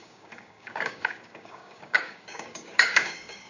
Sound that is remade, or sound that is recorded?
remade